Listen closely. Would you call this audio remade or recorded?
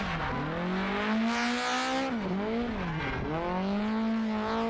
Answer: recorded